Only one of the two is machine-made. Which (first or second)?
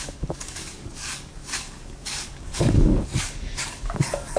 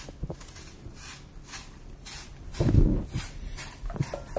first